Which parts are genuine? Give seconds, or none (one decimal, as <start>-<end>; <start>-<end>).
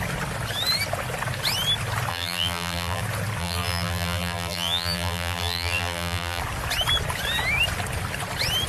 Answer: 0.0-2.1; 3.0-3.4; 6.4-8.7